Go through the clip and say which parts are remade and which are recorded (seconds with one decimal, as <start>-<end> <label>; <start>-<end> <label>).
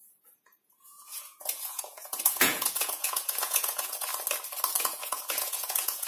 0.0-4.1 remade; 4.1-4.8 recorded; 4.8-6.1 remade